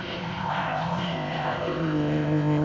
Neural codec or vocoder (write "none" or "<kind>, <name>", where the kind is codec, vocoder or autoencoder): codec, ZipCodec